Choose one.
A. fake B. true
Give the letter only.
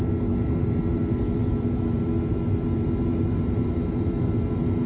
A